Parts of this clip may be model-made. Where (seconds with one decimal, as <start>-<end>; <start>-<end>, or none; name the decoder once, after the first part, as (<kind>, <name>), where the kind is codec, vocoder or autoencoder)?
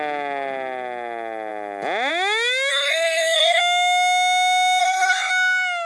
2.7-3.6 (codec, SNAC); 4.8-5.3